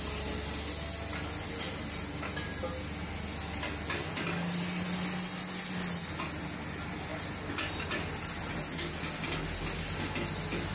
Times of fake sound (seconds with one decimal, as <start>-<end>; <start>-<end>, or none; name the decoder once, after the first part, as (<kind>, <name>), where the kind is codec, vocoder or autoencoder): none